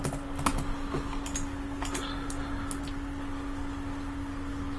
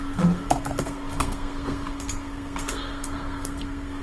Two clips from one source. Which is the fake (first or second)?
second